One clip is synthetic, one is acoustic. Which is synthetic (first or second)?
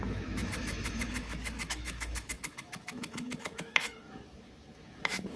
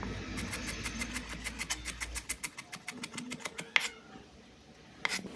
first